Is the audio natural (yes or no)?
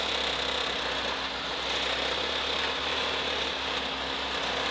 yes